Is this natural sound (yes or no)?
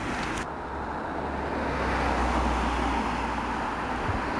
yes